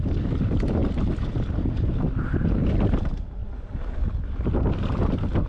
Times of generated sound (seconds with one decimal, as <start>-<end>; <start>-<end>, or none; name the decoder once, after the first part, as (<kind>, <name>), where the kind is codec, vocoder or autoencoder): none